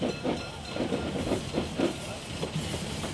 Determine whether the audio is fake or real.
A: real